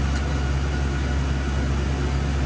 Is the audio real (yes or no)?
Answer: yes